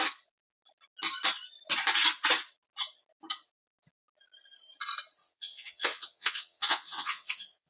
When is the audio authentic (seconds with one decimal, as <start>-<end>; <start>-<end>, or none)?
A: 0.0-5.2